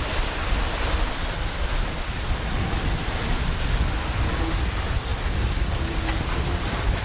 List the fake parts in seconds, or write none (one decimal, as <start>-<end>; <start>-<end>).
none